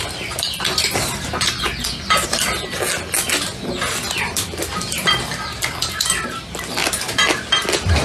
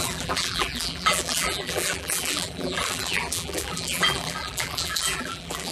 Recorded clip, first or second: first